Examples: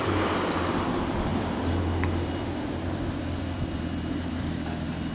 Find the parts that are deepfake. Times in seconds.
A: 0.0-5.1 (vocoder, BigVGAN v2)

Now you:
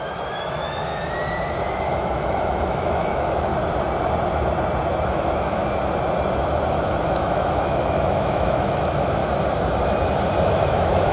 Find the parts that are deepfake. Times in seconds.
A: 0.0-0.9 (autoencoder, DAC-VAE); 1.8-3.5; 5.1-5.6; 6.7-9.2; 10.4-11.1

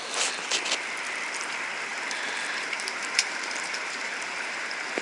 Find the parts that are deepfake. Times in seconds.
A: 1.9-5.0 (vocoder, BigVGAN v2)

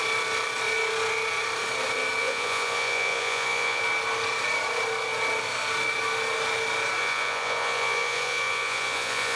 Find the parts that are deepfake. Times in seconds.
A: 2.2-3.8 (vocoder, Vocos); 7.0-9.4

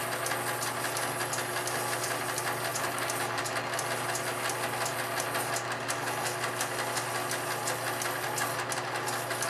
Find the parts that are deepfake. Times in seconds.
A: 2.7-3.6 (vocoder, BigVGAN v2)

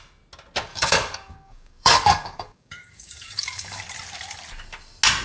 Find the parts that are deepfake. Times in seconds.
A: 0.7-3.8 (codec, DAC)

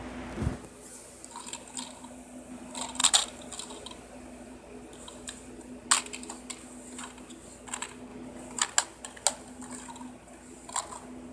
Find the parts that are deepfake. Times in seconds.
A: none